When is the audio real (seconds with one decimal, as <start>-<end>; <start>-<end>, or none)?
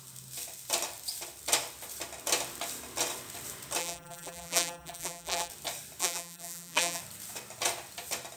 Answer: 0.0-3.8; 5.5-6.0; 7.0-8.4